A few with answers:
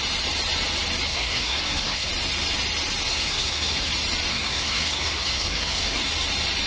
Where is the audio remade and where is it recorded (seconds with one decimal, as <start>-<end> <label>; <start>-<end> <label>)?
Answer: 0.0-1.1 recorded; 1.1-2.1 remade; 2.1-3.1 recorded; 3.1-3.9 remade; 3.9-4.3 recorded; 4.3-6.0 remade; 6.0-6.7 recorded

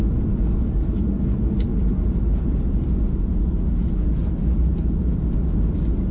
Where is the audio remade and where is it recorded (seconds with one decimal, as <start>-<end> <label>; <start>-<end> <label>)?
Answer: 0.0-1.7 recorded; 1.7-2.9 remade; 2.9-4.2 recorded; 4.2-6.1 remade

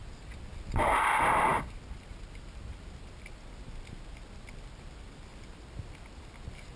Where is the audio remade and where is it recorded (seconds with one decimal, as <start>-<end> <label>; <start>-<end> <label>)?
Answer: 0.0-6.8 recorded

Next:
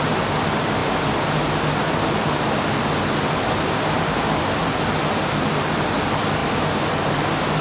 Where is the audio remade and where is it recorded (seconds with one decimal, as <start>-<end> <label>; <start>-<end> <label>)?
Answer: 0.0-7.6 recorded

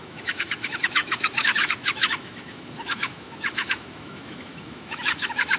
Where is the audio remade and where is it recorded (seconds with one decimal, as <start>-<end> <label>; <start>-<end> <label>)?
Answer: 0.0-5.6 remade

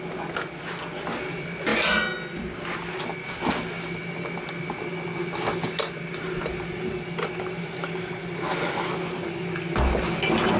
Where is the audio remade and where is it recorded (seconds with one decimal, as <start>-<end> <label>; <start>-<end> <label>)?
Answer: 0.0-10.6 recorded

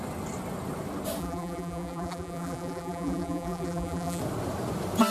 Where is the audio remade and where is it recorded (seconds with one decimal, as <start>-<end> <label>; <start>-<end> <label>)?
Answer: 0.0-1.2 recorded; 1.2-4.2 remade; 4.2-5.1 recorded

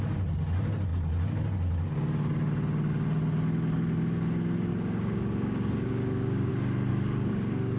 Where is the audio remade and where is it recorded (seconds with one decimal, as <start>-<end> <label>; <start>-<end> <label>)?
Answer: 0.0-4.7 recorded; 4.7-6.5 remade; 6.5-6.9 recorded; 6.9-7.8 remade